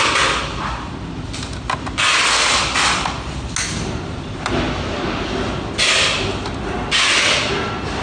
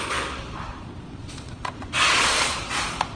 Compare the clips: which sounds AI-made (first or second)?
second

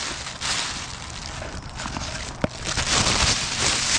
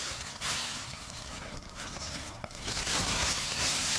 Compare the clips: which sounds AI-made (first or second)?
second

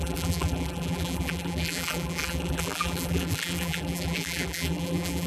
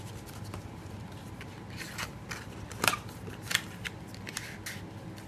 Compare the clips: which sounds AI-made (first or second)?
first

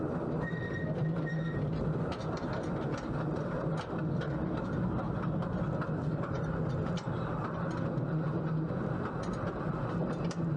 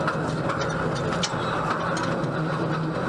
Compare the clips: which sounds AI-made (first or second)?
first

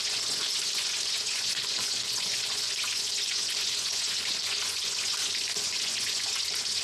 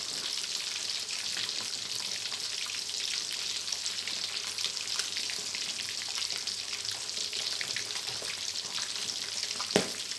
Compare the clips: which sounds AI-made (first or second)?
first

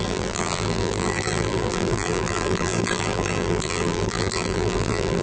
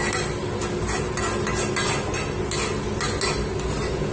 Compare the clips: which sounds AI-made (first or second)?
first